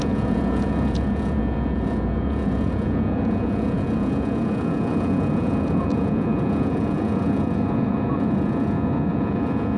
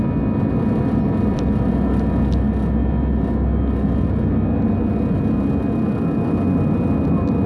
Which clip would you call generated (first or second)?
first